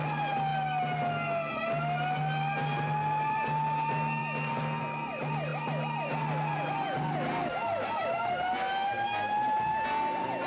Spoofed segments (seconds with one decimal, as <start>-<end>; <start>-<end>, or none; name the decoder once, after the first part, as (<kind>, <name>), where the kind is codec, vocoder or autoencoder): none